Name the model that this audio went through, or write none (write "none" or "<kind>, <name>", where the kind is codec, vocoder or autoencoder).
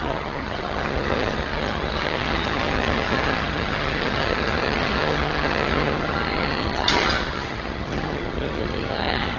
vocoder, HiFi-GAN